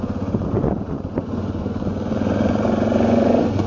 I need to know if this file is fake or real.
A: fake